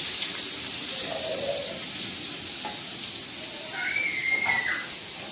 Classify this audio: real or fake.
real